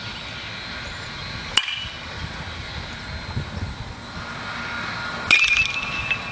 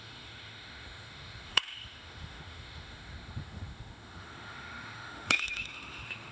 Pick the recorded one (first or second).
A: first